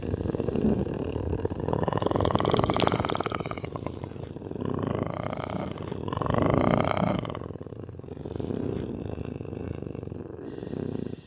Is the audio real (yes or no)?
yes